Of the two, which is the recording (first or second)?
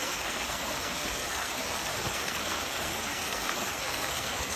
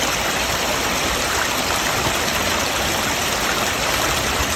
second